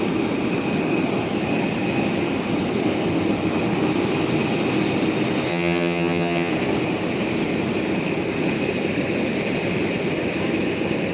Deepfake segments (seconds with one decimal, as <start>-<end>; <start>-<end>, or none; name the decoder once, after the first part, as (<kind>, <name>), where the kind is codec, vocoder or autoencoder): 5.5-6.5 (vocoder, HiFi-GAN)

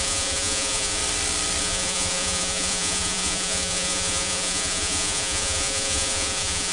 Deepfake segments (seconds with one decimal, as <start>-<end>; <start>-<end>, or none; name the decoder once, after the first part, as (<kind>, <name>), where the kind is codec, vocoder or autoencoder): 0.0-1.0 (vocoder, Vocos); 1.6-6.7

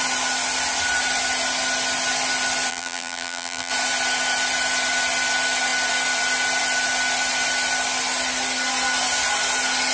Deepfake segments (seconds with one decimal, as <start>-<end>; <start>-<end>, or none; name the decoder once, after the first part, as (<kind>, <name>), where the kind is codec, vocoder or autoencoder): 2.7-3.7 (vocoder, BigVGAN v2)

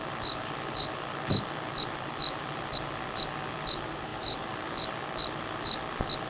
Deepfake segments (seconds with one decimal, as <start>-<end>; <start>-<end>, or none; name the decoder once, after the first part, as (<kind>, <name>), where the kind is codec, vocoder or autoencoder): 2.0-6.3 (vocoder, BigVGAN v2)

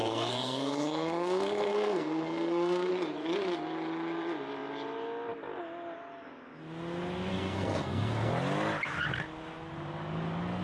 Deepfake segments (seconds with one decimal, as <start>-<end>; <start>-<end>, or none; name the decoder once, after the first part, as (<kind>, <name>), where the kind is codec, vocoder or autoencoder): 0.0-2.9 (codec, SNAC); 7.3-8.3

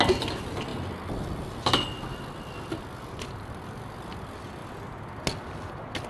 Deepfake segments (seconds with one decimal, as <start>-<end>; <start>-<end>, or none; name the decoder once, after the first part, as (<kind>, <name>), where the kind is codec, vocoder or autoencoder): none

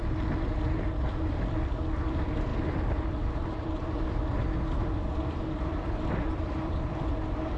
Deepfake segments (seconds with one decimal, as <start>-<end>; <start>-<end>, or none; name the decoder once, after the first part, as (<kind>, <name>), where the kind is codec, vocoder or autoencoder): 0.0-7.6 (vocoder, BigVGAN v2)